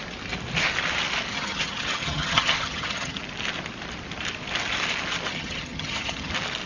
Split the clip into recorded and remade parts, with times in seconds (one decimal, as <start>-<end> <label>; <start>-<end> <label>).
0.0-1.3 recorded; 1.3-3.2 remade; 3.2-5.3 recorded; 5.3-6.3 remade; 6.3-6.7 recorded